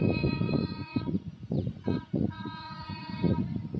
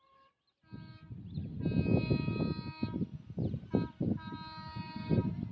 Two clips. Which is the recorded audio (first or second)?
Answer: second